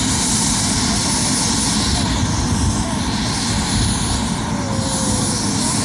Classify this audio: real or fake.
real